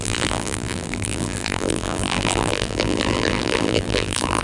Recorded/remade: remade